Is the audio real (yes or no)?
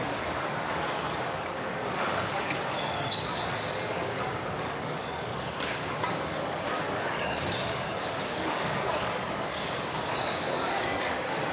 no